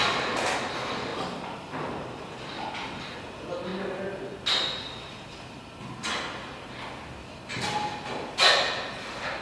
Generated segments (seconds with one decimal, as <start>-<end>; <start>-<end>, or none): none